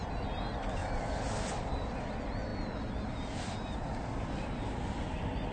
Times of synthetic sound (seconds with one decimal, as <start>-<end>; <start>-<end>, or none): none